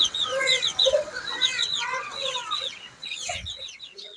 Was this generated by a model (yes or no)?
yes